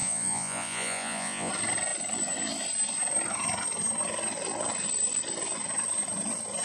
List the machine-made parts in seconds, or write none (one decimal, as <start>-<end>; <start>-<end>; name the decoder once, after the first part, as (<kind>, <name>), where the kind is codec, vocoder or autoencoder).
0.0-1.5 (vocoder, Vocos)